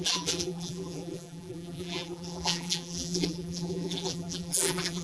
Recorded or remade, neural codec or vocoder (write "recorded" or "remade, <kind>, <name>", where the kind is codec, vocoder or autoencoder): remade, vocoder, BigVGAN v2